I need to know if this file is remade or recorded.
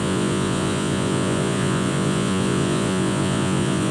remade